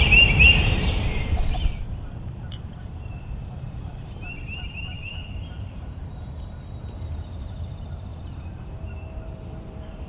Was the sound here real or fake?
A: fake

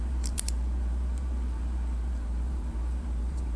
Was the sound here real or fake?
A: fake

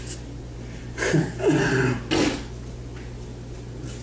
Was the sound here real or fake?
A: real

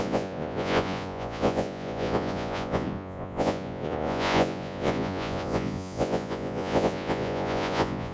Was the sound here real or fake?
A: fake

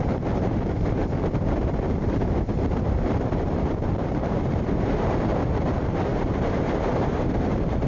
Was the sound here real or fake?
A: fake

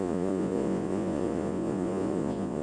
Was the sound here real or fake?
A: fake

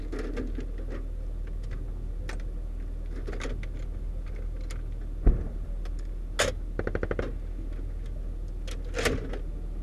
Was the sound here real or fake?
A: real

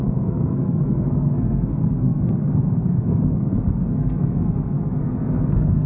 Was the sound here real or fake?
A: fake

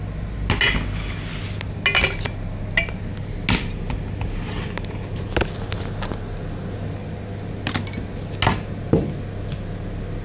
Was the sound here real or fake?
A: real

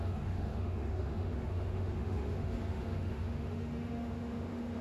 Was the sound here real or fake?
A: fake